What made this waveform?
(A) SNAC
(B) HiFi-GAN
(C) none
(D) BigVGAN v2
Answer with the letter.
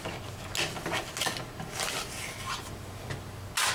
C